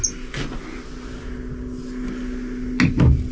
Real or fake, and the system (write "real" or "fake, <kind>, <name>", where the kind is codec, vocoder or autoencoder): real